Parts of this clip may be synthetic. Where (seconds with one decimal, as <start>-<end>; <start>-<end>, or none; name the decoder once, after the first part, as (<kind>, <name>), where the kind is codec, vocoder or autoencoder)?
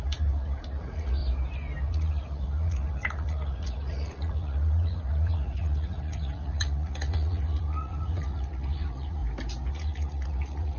0.0-1.2 (vocoder, Vocos); 1.8-9.2; 9.7-10.8